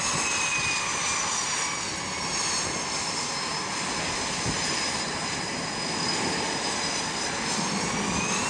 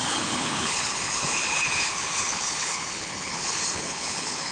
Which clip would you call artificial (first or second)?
second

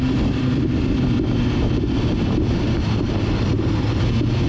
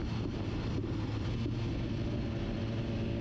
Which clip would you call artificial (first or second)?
first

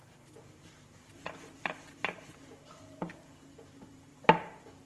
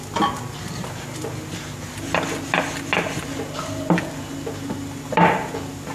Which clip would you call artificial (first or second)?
first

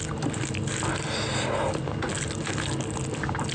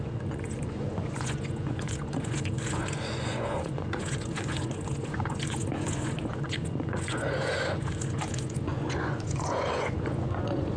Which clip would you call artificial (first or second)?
second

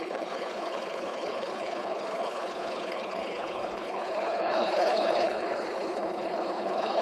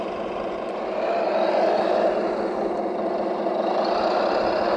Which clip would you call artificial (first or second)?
first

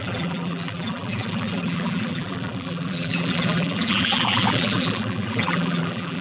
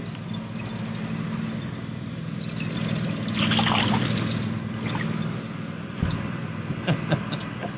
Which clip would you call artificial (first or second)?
first